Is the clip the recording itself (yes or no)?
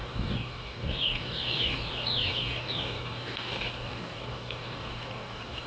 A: no